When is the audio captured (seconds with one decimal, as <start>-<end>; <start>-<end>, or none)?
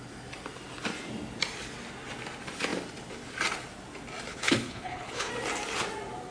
0.0-4.3; 5.3-6.3